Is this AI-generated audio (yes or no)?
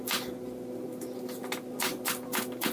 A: no